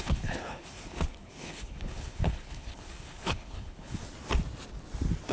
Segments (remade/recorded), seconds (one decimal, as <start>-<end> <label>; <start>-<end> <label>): 0.0-4.0 remade; 4.0-5.3 recorded